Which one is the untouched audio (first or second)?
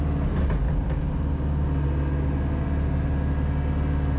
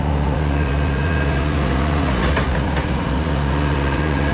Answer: first